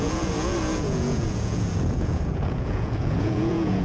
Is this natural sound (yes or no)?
no